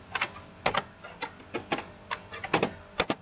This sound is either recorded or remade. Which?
recorded